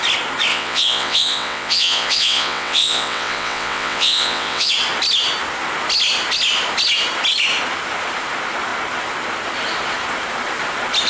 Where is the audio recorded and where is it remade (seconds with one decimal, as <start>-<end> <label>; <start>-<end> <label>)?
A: 0.0-0.5 recorded; 0.5-4.7 remade; 4.7-11.1 recorded